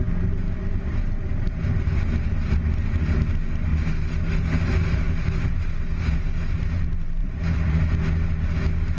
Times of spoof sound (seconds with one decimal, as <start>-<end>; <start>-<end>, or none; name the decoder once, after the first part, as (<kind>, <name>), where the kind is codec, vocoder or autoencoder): 0.6-1.6 (vocoder, BigVGAN v2); 7.2-7.9